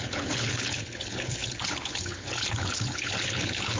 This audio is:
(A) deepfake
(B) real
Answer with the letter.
A